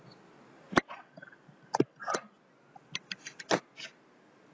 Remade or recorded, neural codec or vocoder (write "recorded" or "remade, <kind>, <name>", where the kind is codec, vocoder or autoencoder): recorded